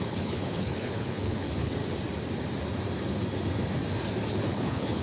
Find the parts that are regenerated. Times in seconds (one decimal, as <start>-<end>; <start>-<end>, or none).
0.0-1.8; 4.3-5.0